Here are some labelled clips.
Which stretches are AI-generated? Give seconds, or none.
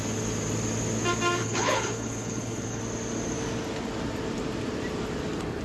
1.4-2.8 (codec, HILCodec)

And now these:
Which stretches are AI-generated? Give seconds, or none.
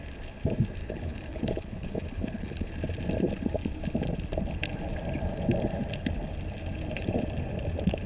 0.8-2.7 (codec, HILCodec)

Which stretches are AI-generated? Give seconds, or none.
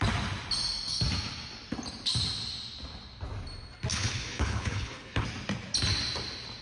3.9-5.2 (codec, HILCodec)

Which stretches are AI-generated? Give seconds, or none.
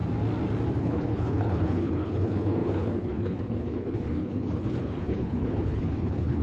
0.8-6.4 (codec, HILCodec)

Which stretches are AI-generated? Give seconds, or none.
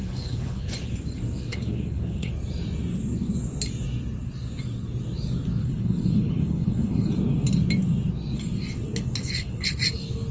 0.0-0.7 (codec, HILCodec); 1.5-2.3; 5.6-7.1; 9.2-9.7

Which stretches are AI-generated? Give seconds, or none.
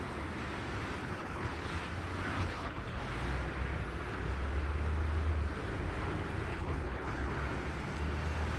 1.0-1.7 (codec, HILCodec); 2.4-3.0; 6.5-7.3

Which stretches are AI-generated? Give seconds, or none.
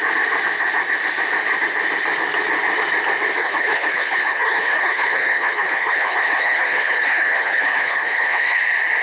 3.4-8.6 (codec, HILCodec)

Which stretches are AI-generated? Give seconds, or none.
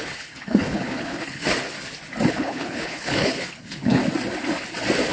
0.0-1.4 (codec, HILCodec); 2.3-4.0